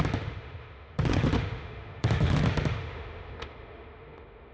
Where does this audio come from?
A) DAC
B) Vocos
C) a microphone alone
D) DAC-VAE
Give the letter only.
D